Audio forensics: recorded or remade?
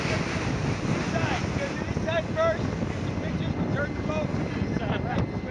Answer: recorded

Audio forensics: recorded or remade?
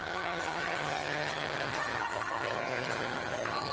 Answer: remade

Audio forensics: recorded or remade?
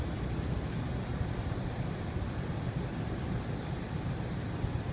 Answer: recorded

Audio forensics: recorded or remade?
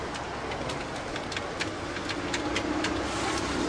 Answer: recorded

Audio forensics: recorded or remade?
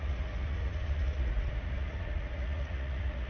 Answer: remade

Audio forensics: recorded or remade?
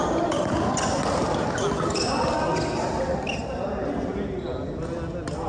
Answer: recorded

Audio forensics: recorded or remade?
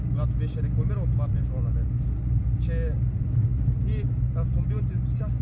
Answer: recorded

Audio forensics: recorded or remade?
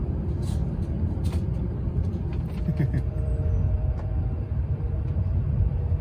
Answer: remade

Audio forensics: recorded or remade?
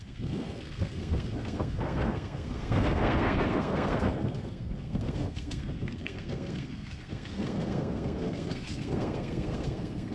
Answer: remade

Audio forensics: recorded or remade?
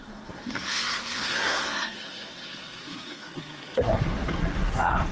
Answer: remade